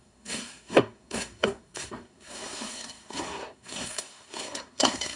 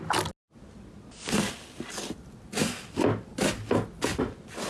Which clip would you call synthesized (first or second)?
first